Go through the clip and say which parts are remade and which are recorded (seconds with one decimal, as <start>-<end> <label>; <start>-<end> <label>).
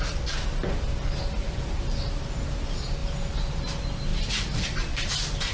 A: 0.0-1.4 recorded; 1.4-2.0 remade; 2.0-3.0 recorded; 3.0-3.6 remade; 3.6-4.1 recorded; 4.1-5.1 remade; 5.1-5.5 recorded